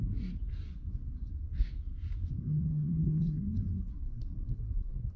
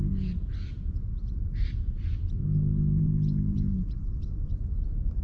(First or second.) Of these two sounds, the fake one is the first